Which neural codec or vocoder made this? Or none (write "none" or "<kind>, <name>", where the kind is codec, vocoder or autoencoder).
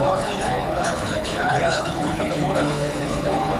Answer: codec, HILCodec